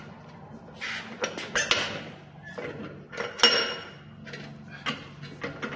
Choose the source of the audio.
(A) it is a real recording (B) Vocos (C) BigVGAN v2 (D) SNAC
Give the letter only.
A